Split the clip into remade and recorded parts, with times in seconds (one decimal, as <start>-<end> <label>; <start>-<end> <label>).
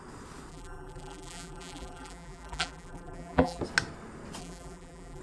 0.0-0.5 recorded; 0.5-3.6 remade; 3.6-4.4 recorded; 4.4-5.2 remade